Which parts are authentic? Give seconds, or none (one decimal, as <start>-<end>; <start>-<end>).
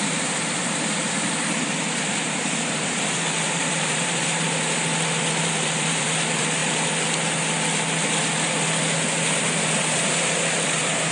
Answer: 4.9-5.4; 6.6-9.4